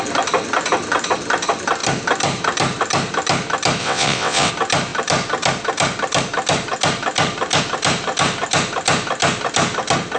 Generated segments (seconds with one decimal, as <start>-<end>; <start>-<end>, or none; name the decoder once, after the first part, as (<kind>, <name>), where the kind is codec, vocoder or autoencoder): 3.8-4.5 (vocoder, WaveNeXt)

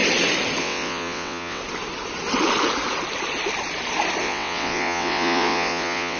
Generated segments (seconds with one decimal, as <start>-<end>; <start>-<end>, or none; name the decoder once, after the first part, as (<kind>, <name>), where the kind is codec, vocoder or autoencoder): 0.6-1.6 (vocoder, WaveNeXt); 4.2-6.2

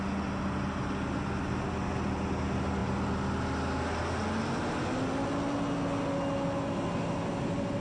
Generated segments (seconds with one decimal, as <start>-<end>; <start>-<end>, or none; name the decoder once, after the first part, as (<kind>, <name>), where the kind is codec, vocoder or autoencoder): none